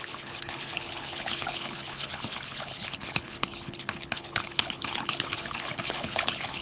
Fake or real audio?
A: fake